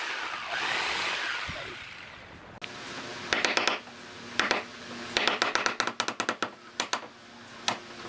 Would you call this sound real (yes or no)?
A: yes